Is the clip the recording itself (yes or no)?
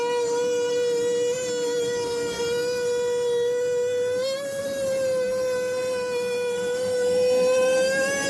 yes